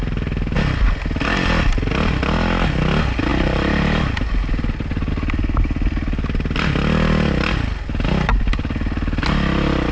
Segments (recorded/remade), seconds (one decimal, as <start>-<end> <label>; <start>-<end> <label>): 0.0-3.3 recorded; 3.3-5.1 remade; 5.1-9.9 recorded